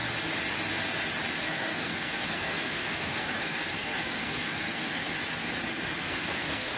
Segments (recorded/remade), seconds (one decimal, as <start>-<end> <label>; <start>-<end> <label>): 0.0-1.4 recorded; 1.4-5.1 remade; 5.1-6.0 recorded; 6.0-6.8 remade